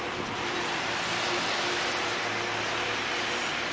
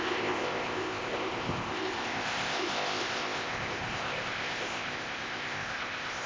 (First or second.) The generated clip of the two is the second